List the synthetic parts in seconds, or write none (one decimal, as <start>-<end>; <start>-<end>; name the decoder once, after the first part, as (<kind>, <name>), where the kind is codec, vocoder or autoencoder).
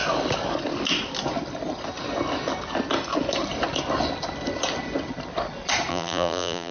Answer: 5.9-6.7 (vocoder, BigVGAN v2)